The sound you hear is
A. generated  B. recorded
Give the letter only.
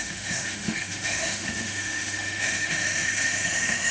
A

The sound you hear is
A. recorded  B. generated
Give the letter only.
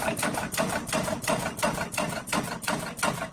A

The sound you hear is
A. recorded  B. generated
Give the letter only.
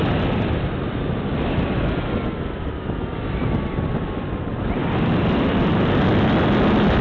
A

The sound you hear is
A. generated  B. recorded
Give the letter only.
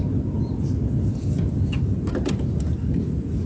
B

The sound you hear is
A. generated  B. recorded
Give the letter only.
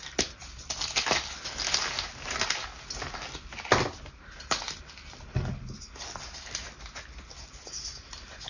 B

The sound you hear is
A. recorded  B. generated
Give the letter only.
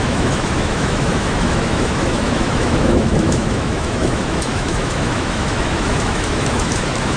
B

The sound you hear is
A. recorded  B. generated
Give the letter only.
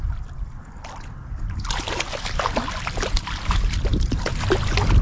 A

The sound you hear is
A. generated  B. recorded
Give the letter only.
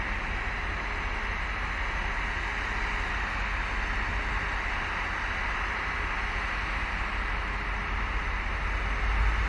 B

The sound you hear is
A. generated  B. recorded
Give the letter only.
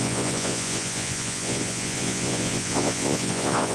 A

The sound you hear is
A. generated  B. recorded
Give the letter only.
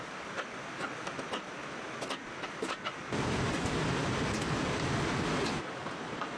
B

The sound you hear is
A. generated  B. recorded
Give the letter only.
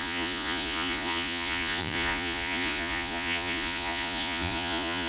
A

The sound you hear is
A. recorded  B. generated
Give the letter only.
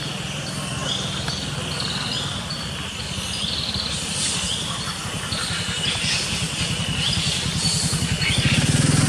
A